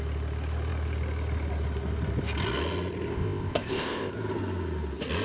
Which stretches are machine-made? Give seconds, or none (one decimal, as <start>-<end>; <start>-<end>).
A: 3.1-4.1